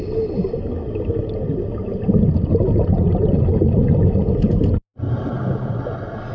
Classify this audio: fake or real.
real